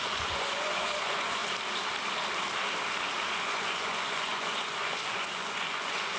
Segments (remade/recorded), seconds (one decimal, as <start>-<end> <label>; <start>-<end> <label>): 0.0-1.4 remade; 1.4-3.3 recorded; 3.3-6.2 remade